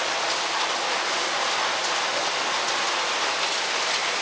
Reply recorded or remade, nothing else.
recorded